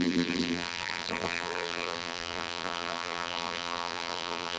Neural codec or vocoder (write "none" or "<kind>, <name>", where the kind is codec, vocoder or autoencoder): vocoder, BigVGAN v2